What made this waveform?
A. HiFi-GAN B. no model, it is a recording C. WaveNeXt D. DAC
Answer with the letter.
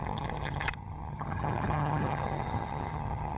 A